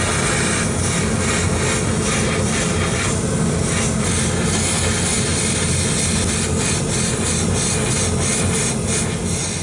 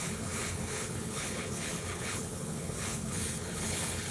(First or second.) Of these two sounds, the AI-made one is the second